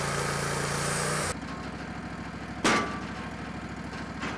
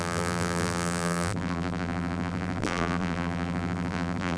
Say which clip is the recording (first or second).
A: first